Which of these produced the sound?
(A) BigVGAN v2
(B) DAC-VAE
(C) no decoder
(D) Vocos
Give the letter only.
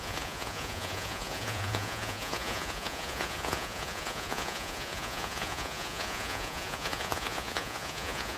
D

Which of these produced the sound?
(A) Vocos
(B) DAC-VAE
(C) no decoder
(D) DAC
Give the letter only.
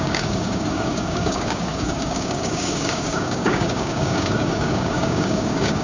D